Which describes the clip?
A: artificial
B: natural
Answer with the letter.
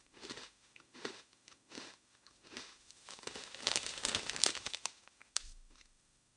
A